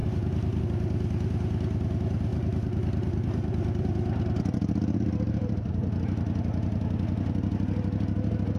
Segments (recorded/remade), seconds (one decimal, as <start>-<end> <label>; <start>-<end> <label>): 0.0-0.6 remade; 0.6-2.3 recorded; 2.3-6.0 remade; 6.0-8.6 recorded